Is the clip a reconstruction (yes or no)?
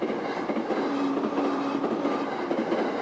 no